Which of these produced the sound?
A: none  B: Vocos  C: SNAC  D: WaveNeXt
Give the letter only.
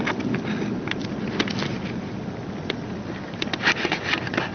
A